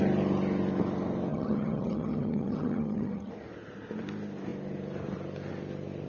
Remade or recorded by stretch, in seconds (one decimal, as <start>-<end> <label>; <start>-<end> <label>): 0.0-1.3 recorded; 1.3-3.3 remade; 3.3-6.1 recorded